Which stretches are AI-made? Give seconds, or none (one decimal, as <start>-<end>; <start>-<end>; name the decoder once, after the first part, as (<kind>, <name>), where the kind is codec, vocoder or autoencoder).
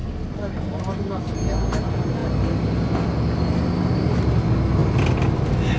none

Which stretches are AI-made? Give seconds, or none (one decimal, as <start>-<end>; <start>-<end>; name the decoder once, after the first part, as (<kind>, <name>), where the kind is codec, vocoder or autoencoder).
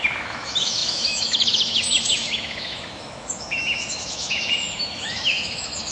0.0-5.9 (autoencoder, DAC-VAE)